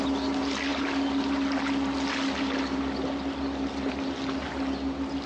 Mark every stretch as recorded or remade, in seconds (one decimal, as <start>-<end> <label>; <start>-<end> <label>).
0.0-5.3 recorded